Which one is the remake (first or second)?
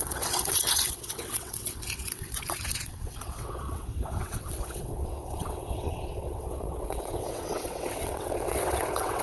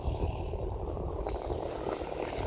first